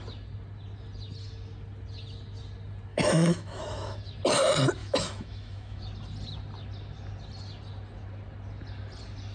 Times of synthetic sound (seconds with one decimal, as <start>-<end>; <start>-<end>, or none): 2.9-4.0; 4.8-5.8